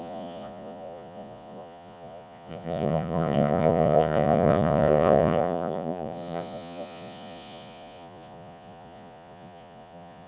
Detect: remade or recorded remade